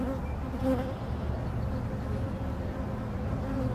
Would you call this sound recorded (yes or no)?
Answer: yes